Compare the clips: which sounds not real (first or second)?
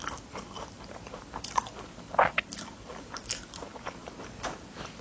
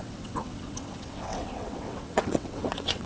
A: second